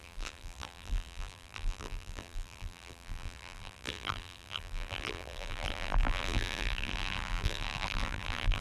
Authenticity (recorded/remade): remade